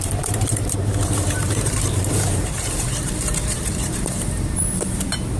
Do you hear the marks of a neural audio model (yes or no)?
yes